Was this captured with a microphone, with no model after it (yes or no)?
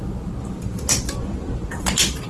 no